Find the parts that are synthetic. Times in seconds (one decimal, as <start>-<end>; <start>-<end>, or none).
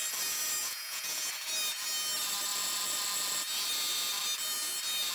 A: 0.6-1.3